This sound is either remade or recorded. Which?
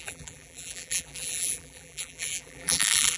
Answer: remade